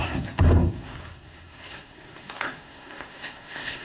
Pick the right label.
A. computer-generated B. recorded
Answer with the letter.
A